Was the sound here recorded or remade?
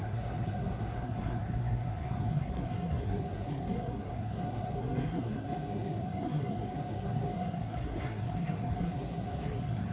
remade